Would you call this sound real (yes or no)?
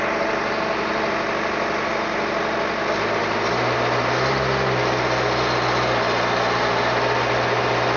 yes